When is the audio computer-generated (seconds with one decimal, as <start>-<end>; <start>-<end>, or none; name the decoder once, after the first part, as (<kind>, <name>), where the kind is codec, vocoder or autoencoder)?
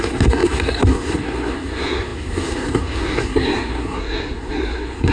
0.0-5.1 (codec, SNAC)